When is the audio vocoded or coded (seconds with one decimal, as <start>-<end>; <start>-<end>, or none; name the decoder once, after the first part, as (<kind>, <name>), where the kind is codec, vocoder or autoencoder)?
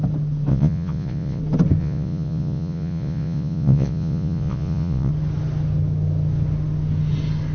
0.5-1.4 (vocoder, Vocos); 1.8-5.1